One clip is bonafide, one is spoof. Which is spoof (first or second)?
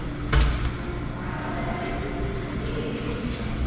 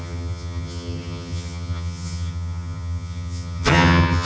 second